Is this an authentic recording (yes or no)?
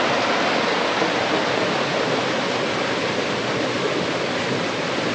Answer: yes